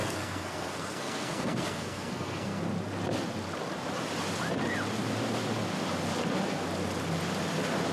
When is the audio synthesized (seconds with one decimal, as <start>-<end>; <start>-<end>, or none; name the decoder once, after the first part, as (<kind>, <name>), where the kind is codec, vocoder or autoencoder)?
0.0-2.6 (codec, SNAC)